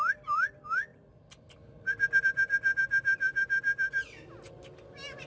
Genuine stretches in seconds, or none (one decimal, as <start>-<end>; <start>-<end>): 0.0-5.3